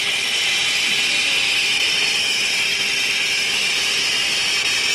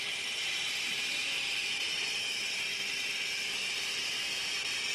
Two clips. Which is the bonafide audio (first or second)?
first